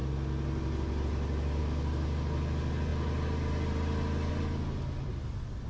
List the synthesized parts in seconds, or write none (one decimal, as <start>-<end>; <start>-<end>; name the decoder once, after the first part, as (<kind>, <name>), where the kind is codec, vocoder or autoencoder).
none